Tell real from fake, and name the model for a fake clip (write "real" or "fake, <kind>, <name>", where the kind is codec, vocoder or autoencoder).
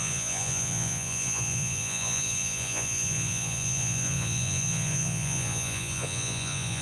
fake, vocoder, Vocos